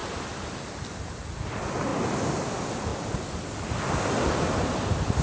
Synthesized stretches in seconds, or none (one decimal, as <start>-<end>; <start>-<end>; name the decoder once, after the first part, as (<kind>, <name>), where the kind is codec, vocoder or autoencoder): none